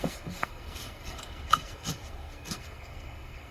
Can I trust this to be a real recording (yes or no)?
no